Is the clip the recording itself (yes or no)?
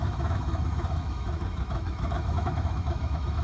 no